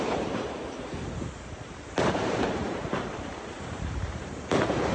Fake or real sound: fake